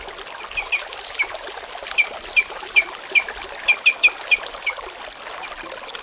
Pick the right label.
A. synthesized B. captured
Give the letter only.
B